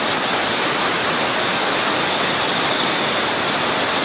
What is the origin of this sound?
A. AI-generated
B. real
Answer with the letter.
A